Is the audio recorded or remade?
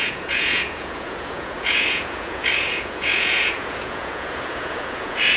remade